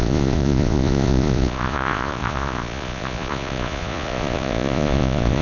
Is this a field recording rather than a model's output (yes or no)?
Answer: no